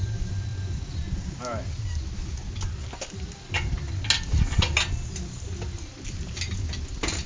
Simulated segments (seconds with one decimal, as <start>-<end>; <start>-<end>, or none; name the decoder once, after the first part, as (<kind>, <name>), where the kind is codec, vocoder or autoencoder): none